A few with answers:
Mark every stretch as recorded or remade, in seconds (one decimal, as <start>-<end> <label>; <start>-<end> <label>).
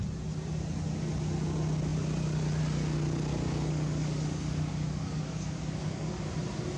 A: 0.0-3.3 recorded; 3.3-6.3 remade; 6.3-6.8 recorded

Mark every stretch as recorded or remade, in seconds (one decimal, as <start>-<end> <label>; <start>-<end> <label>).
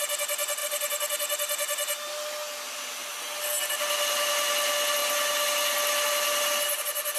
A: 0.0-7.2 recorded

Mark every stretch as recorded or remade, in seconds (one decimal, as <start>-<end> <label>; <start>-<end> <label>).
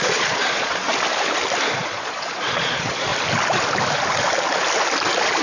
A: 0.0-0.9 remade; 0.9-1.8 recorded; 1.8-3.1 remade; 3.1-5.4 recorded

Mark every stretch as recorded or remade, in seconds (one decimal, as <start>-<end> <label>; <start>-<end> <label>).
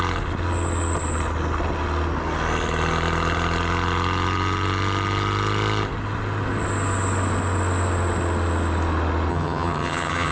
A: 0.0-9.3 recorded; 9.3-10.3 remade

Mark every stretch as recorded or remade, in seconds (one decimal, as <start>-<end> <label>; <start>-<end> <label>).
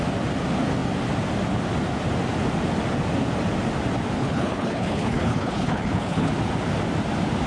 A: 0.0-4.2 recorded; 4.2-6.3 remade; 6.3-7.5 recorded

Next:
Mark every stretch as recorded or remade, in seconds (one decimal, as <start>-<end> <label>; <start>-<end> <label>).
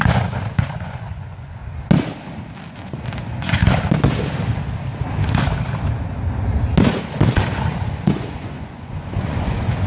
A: 0.0-1.6 remade; 1.6-2.7 recorded; 2.7-3.6 remade; 3.6-7.5 recorded; 7.5-9.9 remade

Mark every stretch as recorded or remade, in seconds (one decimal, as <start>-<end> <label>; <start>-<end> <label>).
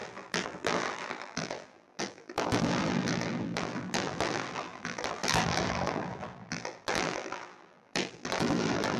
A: 0.0-9.0 remade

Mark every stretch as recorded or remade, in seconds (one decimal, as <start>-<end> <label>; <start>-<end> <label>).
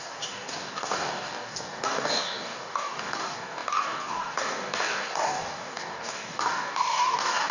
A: 0.0-7.5 remade